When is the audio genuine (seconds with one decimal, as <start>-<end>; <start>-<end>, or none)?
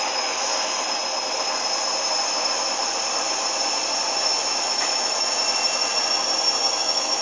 0.5-4.6; 5.4-6.8